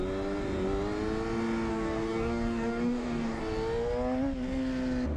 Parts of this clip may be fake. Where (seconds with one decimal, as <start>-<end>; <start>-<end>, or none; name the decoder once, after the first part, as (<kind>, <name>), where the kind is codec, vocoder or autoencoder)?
1.7-3.4 (codec, DAC)